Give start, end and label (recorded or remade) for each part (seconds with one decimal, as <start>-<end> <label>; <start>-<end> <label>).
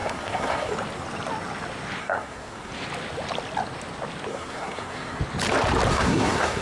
0.0-0.7 remade; 0.7-2.0 recorded; 2.0-2.7 remade; 2.7-4.3 recorded; 4.3-5.2 remade; 5.2-5.9 recorded; 5.9-6.6 remade